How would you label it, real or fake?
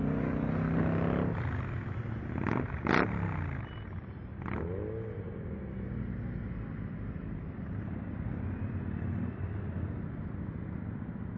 real